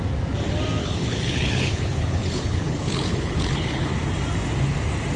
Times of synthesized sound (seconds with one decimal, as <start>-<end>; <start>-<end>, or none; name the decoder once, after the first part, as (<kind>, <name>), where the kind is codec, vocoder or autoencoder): 0.8-3.9 (codec, HILCodec)